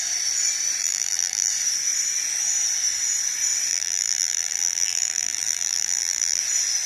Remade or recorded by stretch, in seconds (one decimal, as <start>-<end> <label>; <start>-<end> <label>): 0.0-0.8 recorded; 0.8-1.5 remade; 1.5-3.7 recorded; 3.7-6.4 remade; 6.4-6.9 recorded